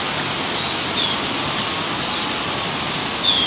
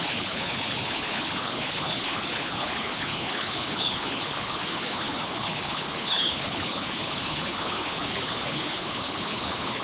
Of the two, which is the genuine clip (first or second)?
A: first